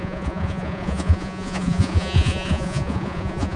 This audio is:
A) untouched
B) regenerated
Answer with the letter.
B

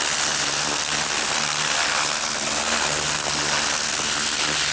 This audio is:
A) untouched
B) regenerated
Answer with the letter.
A